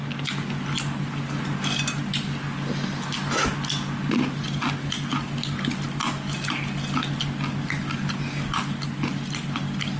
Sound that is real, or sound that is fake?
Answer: real